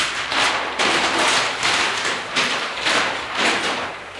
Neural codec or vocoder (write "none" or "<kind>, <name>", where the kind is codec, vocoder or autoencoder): vocoder, BigVGAN v2